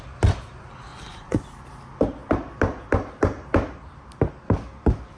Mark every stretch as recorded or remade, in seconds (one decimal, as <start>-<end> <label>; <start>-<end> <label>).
0.0-0.9 recorded; 0.9-1.4 remade; 1.4-5.2 recorded